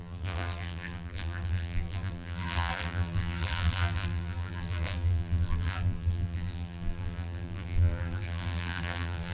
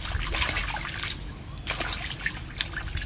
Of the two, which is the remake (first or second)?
first